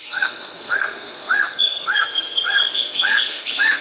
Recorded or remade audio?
remade